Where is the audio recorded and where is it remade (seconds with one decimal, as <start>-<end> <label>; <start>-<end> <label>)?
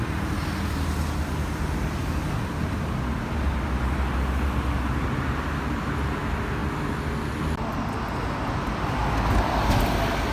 0.0-10.3 recorded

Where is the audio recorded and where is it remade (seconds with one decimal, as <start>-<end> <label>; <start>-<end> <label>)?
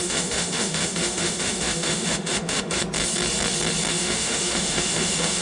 0.0-2.8 remade; 2.8-3.9 recorded; 3.9-5.4 remade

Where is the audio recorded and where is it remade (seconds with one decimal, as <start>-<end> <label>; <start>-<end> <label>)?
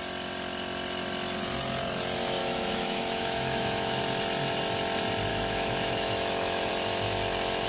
0.0-2.4 recorded; 2.4-4.0 remade; 4.0-5.3 recorded; 5.3-6.7 remade; 6.7-7.7 recorded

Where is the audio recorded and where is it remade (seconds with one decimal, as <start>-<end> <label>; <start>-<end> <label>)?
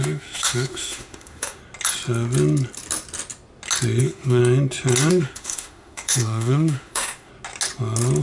0.0-1.6 remade; 1.6-4.0 recorded; 4.0-4.4 remade; 4.4-5.1 recorded; 5.1-7.3 remade; 7.3-8.2 recorded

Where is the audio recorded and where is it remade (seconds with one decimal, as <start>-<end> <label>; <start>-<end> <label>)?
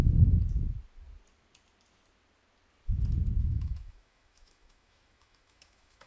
0.0-3.4 recorded; 3.4-6.1 remade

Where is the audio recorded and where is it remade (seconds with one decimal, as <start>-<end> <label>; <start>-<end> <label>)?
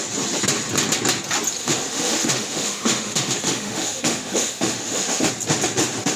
0.0-1.6 recorded; 1.6-5.3 remade; 5.3-6.2 recorded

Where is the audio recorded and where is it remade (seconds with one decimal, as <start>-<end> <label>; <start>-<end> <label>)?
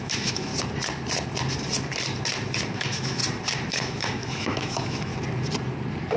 0.0-0.5 remade; 0.5-2.7 recorded; 2.7-3.2 remade; 3.2-3.7 recorded; 3.7-5.1 remade; 5.1-6.2 recorded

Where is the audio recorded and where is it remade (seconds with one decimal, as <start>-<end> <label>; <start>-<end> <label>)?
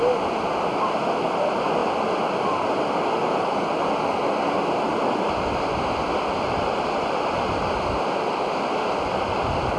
0.0-9.8 recorded